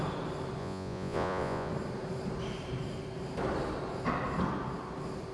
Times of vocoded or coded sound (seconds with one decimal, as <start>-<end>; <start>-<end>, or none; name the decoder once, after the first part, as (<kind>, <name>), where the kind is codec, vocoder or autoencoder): 0.6-1.7 (vocoder, Vocos)